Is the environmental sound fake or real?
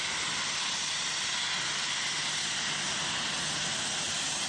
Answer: real